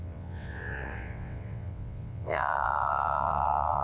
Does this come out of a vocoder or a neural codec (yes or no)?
yes